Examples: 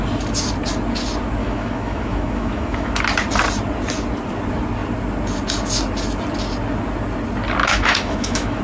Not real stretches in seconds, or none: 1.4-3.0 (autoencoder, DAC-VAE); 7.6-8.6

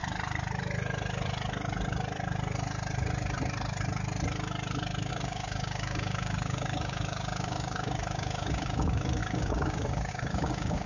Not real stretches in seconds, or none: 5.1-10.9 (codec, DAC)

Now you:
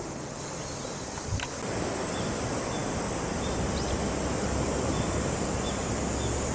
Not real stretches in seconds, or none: none